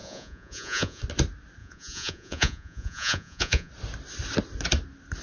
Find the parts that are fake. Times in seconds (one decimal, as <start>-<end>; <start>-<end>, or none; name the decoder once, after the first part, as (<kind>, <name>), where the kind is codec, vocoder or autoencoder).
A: 0.0-1.0 (vocoder, Vocos); 1.6-3.7